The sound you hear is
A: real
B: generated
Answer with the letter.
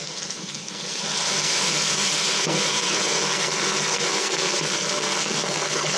B